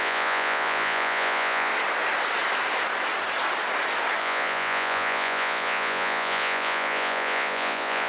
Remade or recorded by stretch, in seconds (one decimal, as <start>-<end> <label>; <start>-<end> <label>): 0.0-1.7 remade; 1.7-4.2 recorded; 4.2-8.1 remade